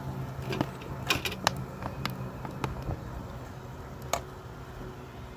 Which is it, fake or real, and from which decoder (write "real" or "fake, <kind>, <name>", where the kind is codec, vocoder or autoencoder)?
real